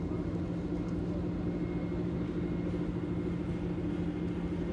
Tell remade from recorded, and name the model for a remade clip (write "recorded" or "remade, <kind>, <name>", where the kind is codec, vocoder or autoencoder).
recorded